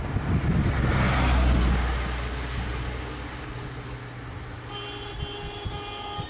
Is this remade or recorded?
recorded